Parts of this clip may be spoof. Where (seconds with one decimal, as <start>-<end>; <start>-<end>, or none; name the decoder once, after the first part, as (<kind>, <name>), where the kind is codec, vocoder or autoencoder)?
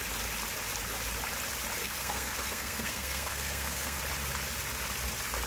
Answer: 1.8-4.0 (codec, SNAC)